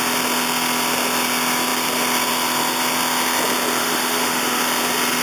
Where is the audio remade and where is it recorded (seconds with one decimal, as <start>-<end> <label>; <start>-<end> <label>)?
0.0-3.8 recorded; 3.8-4.6 remade; 4.6-5.2 recorded